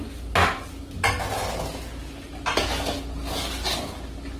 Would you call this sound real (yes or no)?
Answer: yes